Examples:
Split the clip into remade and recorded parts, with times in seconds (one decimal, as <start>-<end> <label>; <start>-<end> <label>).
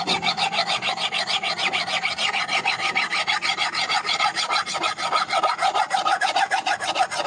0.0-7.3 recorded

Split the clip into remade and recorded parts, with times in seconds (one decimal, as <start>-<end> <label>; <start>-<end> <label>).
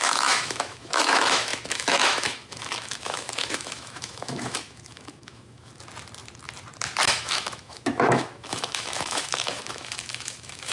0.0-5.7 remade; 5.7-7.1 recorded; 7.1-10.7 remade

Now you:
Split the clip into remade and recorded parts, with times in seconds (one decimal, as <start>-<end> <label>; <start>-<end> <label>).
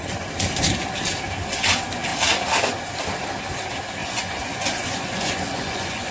0.0-4.0 recorded; 4.0-6.1 remade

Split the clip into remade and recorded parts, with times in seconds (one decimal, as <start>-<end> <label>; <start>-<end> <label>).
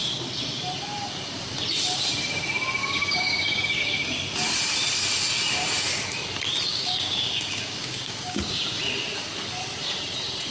0.0-2.8 recorded; 2.8-3.8 remade; 3.8-6.7 recorded; 6.7-8.8 remade; 8.8-10.5 recorded